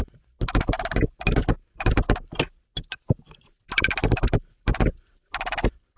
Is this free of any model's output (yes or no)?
yes